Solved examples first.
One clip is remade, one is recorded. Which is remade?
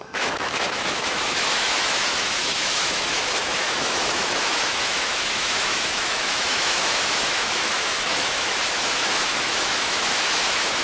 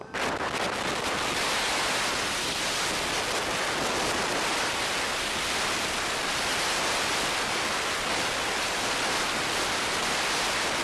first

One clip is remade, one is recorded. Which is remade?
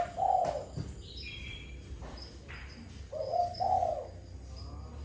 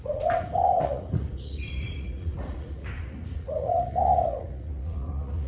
second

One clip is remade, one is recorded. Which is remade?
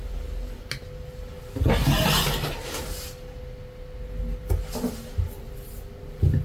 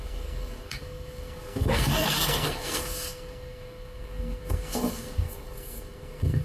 second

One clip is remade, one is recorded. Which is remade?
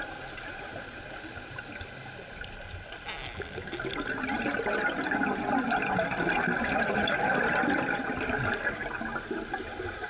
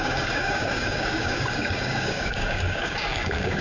second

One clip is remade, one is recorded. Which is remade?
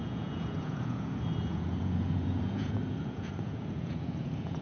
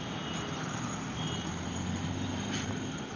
first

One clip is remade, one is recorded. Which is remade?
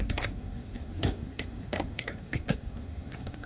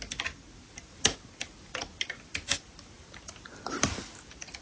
first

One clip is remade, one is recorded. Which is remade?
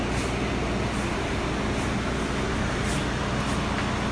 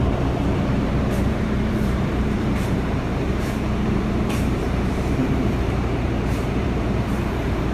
second